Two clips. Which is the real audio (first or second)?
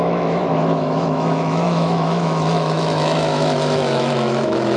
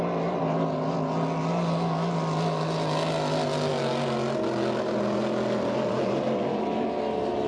second